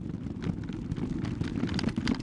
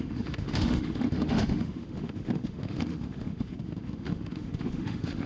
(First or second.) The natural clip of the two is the first